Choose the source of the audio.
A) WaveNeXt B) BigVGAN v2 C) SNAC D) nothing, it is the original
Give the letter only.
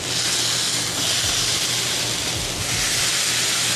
D